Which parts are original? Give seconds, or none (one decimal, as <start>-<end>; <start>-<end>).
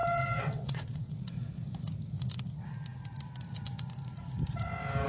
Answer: 1.5-5.1